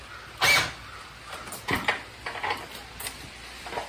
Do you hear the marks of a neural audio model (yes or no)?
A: no